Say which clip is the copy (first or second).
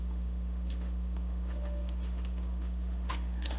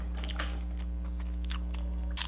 first